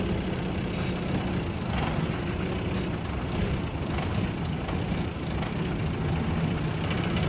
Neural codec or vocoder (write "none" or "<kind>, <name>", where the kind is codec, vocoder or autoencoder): none